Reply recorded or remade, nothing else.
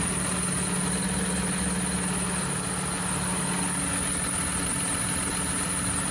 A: recorded